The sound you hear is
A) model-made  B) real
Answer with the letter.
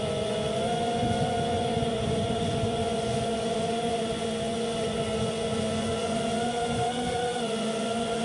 A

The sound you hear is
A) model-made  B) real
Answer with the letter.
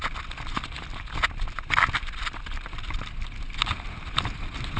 B